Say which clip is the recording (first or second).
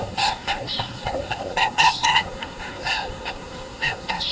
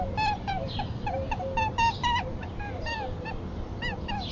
second